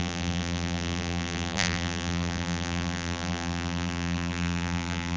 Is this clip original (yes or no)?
no